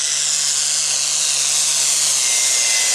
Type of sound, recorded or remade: recorded